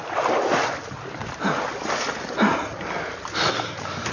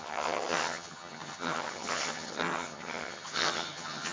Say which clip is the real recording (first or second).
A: first